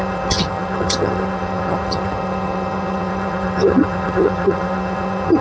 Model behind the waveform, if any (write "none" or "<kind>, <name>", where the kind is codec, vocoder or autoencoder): vocoder, HiFi-GAN